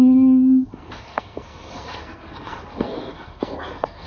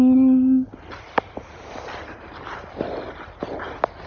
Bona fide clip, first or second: second